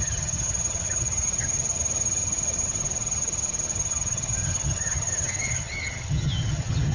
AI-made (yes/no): yes